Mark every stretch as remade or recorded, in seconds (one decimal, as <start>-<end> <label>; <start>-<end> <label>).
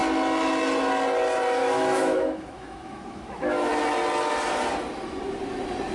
0.0-1.6 recorded; 1.6-3.7 remade; 3.7-5.9 recorded